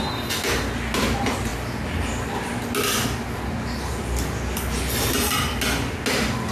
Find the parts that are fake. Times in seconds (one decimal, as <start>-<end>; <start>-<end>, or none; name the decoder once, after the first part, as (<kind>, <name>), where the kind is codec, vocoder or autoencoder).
none